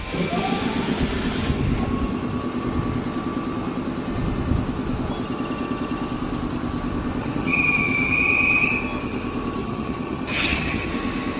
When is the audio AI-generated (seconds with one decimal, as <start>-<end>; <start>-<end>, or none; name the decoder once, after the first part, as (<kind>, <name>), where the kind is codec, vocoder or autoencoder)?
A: 7.2-8.7 (vocoder, HiFi-GAN); 9.6-10.9